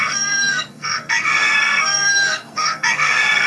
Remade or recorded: remade